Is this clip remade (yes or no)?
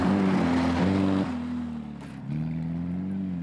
no